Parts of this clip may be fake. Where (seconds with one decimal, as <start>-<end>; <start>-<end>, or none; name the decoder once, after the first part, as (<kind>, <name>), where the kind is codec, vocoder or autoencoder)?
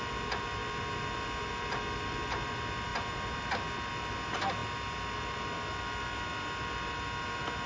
none